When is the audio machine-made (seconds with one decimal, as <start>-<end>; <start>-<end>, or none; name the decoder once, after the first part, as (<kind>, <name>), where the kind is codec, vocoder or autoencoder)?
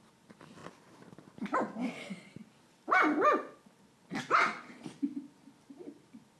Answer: none